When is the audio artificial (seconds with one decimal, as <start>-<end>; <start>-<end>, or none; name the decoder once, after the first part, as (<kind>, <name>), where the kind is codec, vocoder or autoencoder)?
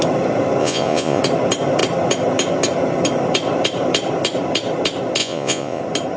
0.6-1.2 (vocoder, Vocos); 5.2-5.8